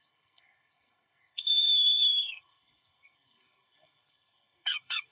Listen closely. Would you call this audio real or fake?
fake